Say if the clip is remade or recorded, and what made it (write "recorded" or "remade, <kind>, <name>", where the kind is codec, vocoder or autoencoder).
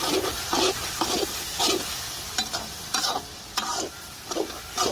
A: recorded